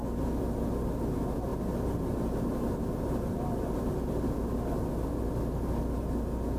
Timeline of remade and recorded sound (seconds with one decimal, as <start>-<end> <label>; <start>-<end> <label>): 0.0-6.6 recorded